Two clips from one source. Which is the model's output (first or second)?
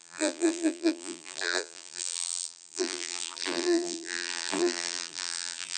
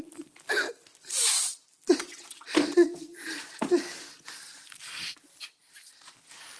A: first